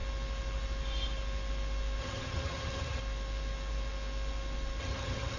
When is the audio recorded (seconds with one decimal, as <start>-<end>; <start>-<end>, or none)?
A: 0.0-2.0; 3.0-4.8